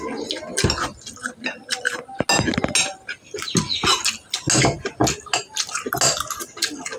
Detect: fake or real real